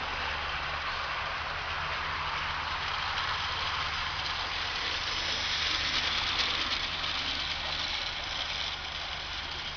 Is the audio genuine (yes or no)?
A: no